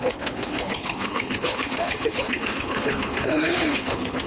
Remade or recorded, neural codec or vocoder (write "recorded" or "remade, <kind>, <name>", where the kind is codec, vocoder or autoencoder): remade, codec, HILCodec